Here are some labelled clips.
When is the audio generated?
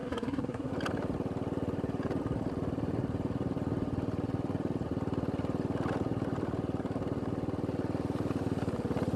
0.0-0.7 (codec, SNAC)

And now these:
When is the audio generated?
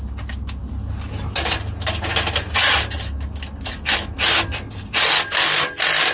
none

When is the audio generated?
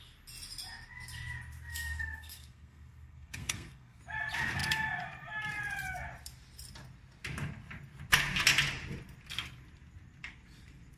1.7-4.0 (codec, SNAC)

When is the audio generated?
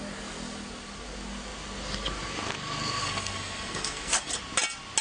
3.0-4.3 (codec, SNAC)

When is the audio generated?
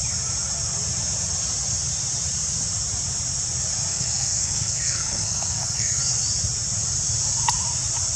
3.9-6.0 (codec, SNAC)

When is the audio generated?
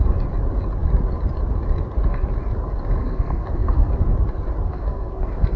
3.0-3.9 (codec, SNAC); 4.7-5.6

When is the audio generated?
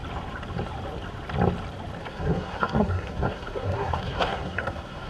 2.0-5.1 (codec, SNAC)